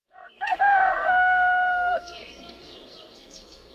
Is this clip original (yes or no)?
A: no